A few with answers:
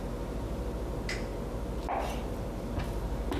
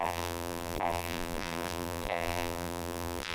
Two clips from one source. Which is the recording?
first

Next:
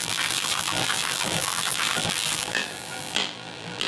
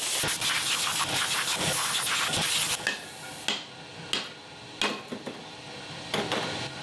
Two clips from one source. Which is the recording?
second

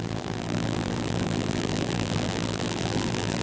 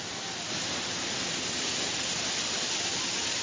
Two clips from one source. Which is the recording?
second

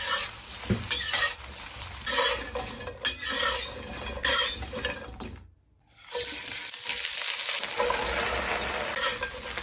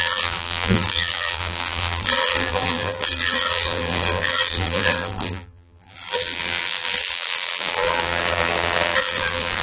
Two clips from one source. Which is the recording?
first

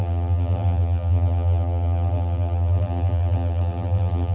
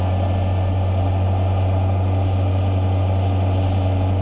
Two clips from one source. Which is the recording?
second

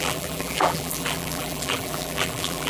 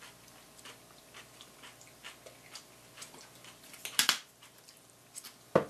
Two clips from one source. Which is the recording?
second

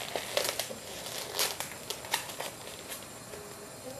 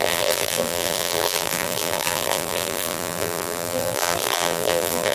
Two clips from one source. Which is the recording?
first